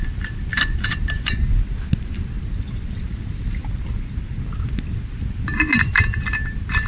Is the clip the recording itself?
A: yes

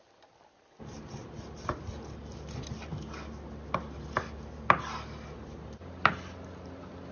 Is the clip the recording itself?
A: no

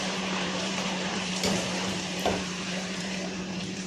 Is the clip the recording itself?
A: no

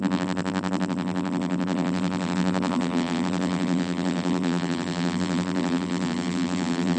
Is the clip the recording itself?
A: no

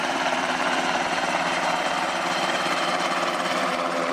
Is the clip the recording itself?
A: no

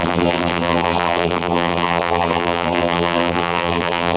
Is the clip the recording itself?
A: no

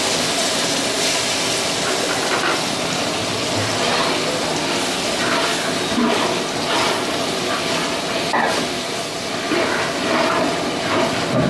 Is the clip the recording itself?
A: yes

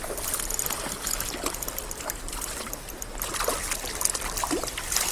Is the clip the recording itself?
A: yes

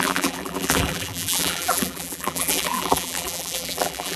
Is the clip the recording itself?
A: no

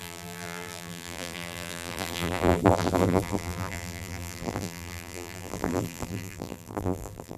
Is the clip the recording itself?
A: no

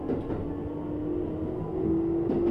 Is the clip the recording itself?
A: yes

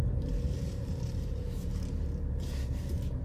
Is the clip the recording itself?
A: no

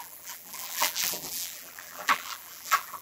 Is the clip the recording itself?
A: no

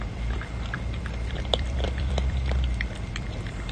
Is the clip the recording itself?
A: no